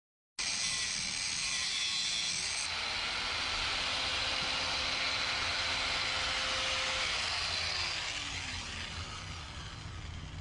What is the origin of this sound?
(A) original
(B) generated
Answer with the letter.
A